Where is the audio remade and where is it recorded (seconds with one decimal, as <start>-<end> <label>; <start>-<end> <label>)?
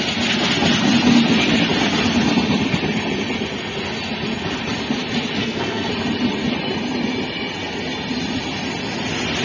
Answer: 0.0-5.4 recorded; 5.4-5.9 remade; 5.9-9.4 recorded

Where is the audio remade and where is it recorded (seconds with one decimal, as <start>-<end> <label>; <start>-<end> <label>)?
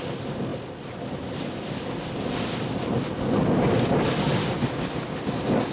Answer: 0.0-5.7 recorded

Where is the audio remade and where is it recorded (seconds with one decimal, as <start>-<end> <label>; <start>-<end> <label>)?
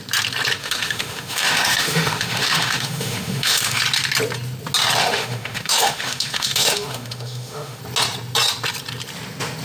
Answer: 0.0-0.6 recorded; 0.6-3.8 remade; 3.8-5.0 recorded; 5.0-7.8 remade; 7.8-9.6 recorded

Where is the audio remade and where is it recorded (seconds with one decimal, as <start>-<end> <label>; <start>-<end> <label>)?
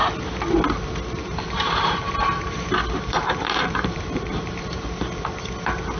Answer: 0.0-1.2 recorded; 1.2-4.8 remade; 4.8-6.0 recorded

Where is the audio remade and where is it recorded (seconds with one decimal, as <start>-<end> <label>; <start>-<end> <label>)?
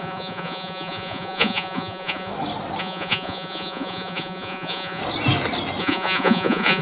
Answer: 0.0-2.3 remade; 2.3-2.8 recorded; 2.8-5.0 remade; 5.0-5.8 recorded; 5.8-6.8 remade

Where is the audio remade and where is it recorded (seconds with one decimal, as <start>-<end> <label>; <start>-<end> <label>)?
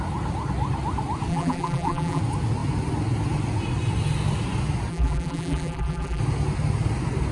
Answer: 0.0-1.3 recorded; 1.3-2.2 remade; 2.2-4.9 recorded; 4.9-6.2 remade; 6.2-7.3 recorded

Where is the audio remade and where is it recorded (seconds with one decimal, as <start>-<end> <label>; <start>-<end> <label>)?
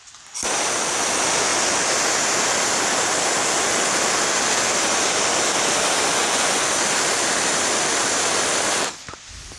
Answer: 0.0-6.2 recorded; 6.2-6.7 remade; 6.7-9.6 recorded